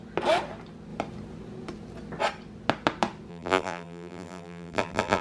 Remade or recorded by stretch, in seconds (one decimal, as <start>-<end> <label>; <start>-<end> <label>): 0.0-3.3 recorded; 3.3-5.2 remade